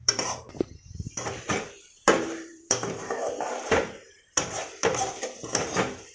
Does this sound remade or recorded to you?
remade